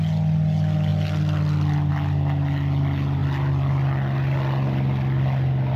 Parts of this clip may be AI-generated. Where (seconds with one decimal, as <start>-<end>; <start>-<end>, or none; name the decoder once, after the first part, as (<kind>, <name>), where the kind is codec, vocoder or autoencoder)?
none